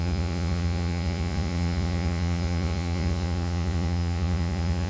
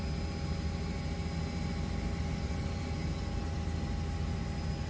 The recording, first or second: second